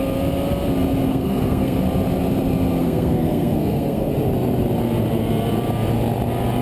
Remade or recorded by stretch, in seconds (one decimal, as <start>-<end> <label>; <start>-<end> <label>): 0.0-1.1 recorded; 1.1-1.8 remade; 1.8-2.8 recorded; 2.8-4.1 remade; 4.1-6.6 recorded